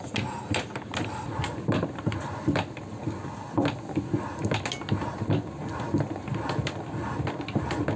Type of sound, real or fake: real